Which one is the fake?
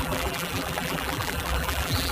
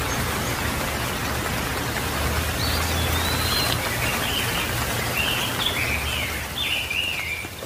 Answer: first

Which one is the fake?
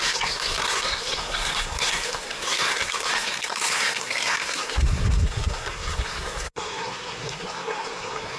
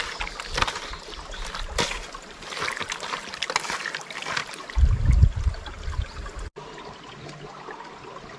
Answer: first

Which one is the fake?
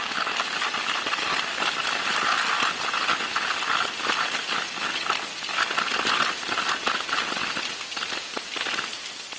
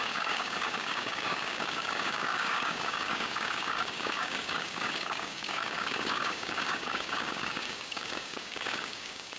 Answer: second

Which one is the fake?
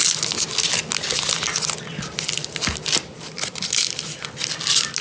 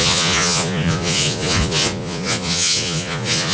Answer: second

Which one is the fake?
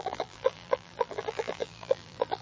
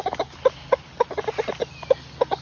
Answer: first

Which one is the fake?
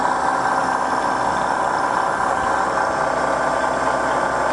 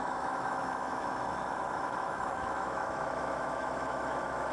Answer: second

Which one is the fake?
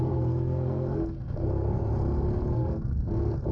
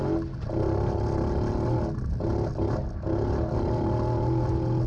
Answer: first